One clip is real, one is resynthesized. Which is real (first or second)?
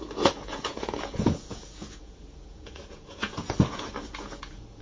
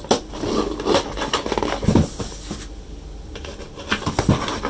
second